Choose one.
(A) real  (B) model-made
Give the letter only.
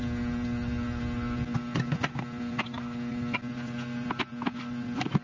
A